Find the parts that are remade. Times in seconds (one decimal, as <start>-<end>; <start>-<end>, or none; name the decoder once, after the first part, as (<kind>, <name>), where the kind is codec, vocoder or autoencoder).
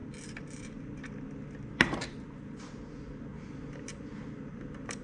none